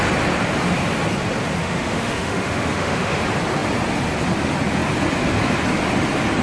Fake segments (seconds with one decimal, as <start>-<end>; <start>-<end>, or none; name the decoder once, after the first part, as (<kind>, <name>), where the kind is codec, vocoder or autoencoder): 1.6-3.2 (autoencoder, DAC-VAE)